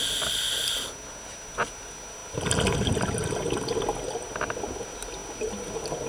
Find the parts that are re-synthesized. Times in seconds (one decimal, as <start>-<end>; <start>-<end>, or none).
none